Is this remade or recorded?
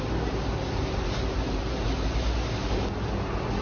recorded